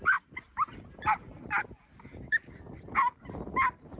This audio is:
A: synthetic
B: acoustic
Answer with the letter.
B